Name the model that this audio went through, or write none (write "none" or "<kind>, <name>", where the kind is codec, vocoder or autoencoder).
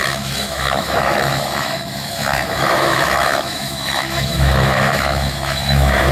autoencoder, DAC-VAE